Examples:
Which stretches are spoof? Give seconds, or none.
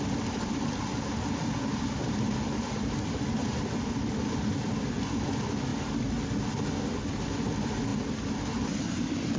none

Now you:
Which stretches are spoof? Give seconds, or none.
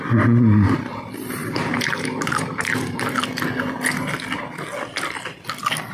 1.4-3.1 (vocoder, BigVGAN v2)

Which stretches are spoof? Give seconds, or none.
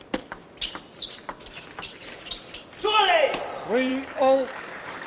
3.9-5.1 (codec, DAC)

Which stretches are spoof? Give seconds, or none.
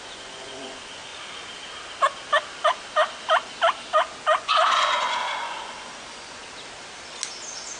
0.0-1.1 (vocoder, Vocos); 4.4-6.4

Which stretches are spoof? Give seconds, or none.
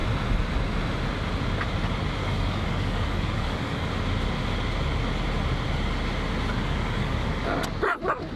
2.2-3.9 (codec, DAC); 6.5-7.4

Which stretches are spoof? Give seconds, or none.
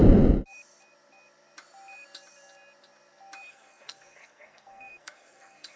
3.5-5.8 (codec, SNAC)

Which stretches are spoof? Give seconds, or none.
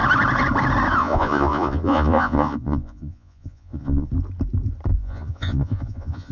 1.0-4.1 (vocoder, Vocos); 4.9-6.3